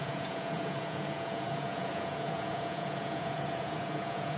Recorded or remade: remade